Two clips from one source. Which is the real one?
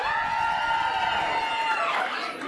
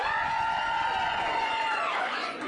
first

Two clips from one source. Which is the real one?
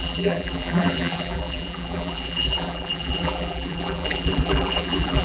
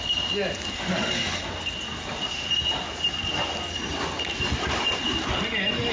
second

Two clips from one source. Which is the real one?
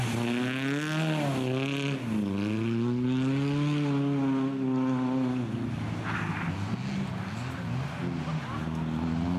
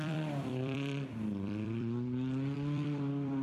first